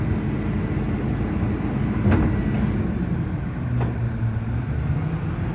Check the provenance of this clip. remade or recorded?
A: recorded